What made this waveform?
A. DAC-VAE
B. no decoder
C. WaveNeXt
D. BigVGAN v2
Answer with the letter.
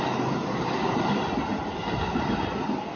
B